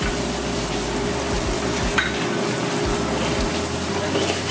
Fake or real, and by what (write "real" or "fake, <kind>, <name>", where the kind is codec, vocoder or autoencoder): real